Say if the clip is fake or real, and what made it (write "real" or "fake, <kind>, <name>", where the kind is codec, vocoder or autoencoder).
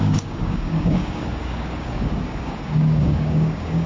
fake, codec, DAC